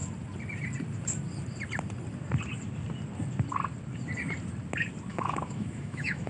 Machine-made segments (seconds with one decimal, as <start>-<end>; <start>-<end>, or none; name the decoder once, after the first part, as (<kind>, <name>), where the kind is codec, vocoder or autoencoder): 5.1-6.3 (autoencoder, DAC-VAE)